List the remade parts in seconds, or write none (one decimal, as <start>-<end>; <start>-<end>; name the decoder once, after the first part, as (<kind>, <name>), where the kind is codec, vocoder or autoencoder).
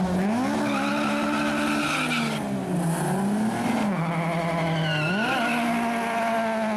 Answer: none